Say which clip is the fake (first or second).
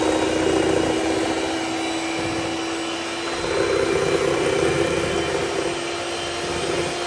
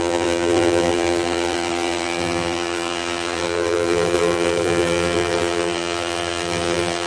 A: second